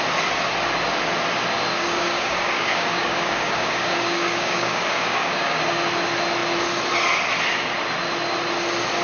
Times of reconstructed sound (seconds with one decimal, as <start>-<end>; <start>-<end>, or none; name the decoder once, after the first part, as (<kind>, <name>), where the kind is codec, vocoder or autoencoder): 1.7-5.6 (codec, DAC)